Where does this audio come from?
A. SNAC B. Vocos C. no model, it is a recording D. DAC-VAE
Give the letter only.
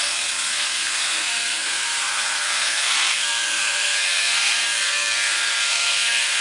A